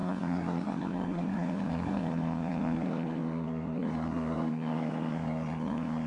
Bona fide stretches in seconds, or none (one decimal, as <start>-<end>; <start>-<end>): none